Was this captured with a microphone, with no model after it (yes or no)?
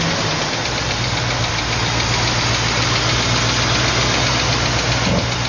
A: yes